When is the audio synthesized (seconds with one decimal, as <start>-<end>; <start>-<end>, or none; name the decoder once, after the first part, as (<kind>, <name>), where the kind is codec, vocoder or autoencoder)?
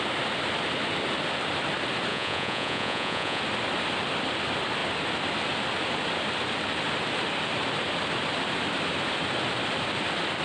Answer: 2.1-3.4 (vocoder, Vocos)